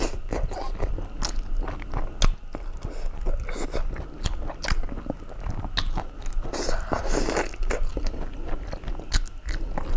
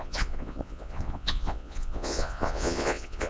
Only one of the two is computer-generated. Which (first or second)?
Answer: second